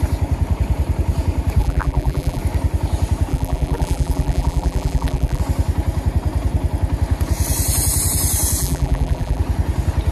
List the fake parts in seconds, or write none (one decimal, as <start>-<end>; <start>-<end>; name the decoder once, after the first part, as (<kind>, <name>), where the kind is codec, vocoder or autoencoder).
1.6-2.4 (vocoder, BigVGAN v2); 3.3-5.4; 8.6-9.4